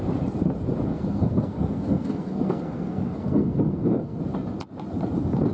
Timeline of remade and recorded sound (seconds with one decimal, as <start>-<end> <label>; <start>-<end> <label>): 0.0-0.9 recorded; 0.9-4.2 remade; 4.2-5.5 recorded